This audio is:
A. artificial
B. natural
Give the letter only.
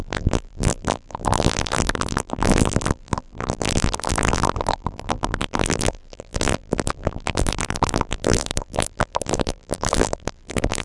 A